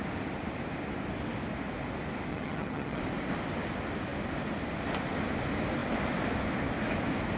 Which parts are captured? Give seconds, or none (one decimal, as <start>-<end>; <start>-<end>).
0.0-2.3; 3.0-7.4